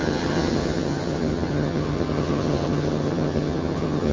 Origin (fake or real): fake